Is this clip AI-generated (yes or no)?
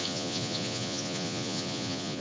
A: yes